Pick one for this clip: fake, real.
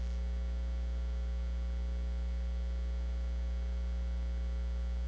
real